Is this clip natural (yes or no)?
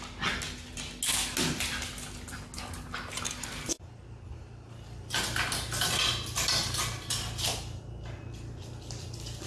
yes